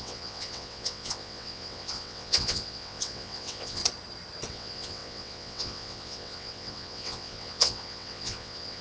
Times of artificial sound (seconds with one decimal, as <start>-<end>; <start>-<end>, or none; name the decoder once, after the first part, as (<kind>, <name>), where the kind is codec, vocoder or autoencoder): 0.0-3.8 (vocoder, WaveNeXt); 4.5-8.8